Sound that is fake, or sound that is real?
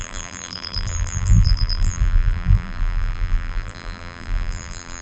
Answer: fake